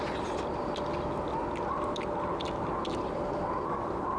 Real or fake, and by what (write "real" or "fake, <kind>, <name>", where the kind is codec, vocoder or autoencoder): real